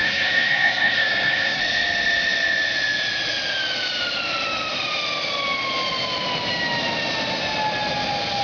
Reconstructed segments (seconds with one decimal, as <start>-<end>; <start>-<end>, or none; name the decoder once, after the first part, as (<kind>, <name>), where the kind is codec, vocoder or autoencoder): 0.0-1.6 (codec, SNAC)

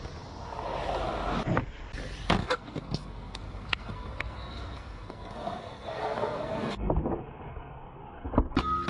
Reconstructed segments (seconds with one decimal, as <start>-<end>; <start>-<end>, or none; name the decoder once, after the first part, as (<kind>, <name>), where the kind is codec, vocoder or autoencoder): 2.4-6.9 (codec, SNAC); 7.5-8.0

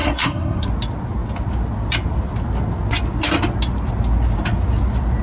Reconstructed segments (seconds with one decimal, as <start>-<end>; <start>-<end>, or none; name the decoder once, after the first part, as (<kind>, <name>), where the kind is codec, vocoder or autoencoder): 0.0-0.7 (codec, SNAC)

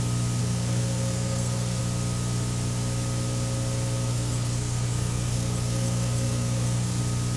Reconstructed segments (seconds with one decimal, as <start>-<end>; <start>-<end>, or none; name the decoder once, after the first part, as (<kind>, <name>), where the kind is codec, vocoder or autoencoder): 0.4-1.8 (codec, SNAC); 4.1-7.0

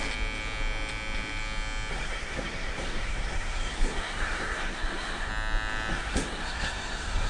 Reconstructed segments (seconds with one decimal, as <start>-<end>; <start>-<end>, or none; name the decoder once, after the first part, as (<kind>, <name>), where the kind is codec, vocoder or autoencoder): 1.9-5.3 (codec, SNAC); 5.9-7.3

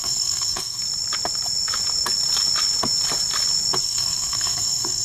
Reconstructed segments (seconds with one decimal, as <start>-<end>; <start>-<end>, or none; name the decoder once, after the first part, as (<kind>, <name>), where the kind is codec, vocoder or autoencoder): 0.0-0.8 (codec, SNAC); 3.8-5.0

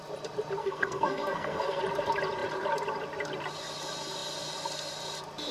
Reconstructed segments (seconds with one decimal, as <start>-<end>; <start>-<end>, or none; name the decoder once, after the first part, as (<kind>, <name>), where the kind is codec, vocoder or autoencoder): 0.6-1.8 (codec, SNAC)